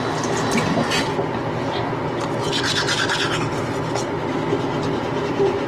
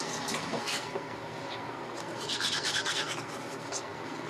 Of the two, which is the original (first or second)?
first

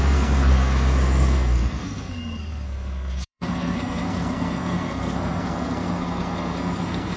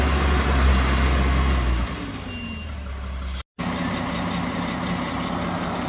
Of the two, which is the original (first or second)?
second